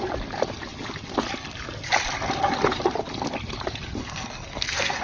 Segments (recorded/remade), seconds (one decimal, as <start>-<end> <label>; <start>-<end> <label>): 0.0-4.0 recorded; 4.0-5.0 remade